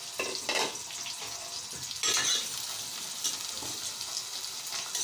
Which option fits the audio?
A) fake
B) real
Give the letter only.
B